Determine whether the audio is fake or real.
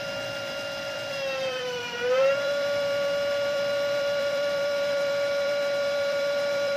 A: fake